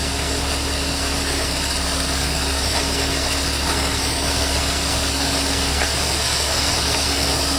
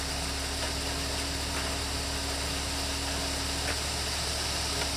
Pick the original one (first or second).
second